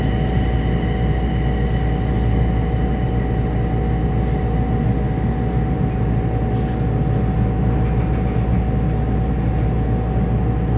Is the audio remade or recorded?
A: recorded